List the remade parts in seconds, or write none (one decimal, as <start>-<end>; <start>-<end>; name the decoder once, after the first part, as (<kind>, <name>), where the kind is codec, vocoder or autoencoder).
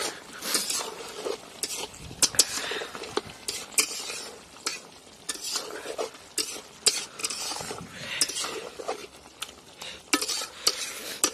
7.2-8.2 (vocoder, BigVGAN v2)